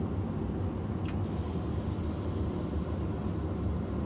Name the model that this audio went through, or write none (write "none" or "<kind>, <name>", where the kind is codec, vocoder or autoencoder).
none